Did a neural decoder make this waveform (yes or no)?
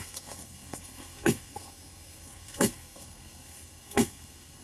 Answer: yes